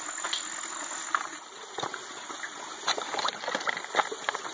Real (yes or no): yes